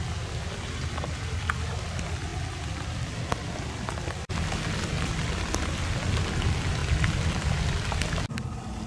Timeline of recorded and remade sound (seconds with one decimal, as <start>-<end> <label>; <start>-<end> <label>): 0.0-8.9 recorded